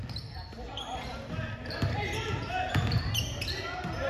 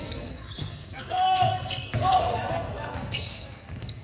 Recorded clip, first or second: first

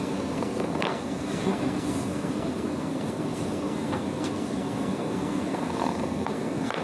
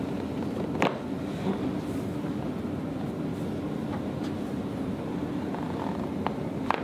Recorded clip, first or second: second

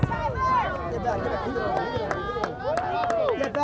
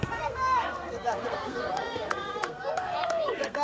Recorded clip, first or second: first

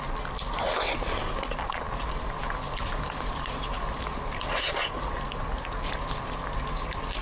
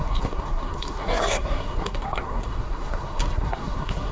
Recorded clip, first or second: first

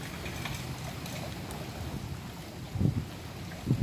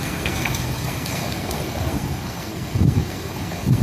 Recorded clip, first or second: first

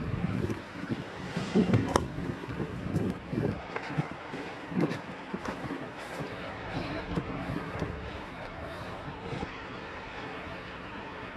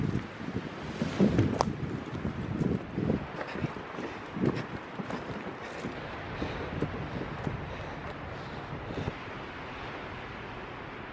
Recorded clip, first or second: second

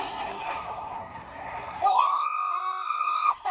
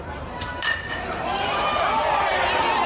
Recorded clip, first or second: second